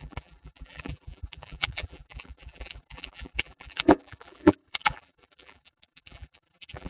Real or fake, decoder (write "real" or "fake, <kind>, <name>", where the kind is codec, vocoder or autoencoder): fake, vocoder, BigVGAN v2